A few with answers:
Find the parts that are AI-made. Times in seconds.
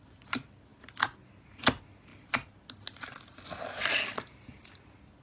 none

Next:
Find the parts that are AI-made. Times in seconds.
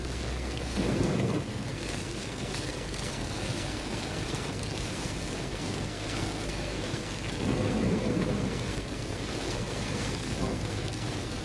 0.0-11.4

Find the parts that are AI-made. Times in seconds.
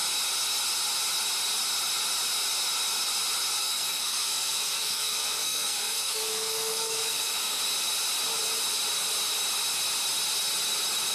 3.6-7.6